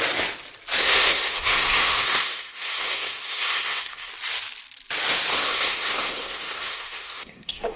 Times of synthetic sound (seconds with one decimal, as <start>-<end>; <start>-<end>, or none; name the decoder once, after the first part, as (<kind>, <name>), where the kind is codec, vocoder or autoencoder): 0.8-4.1 (codec, SNAC); 5.3-7.8